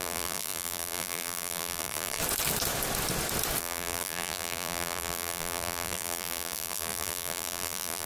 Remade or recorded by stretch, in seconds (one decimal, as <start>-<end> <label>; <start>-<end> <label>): 0.0-2.2 remade; 2.2-3.6 recorded; 3.6-8.1 remade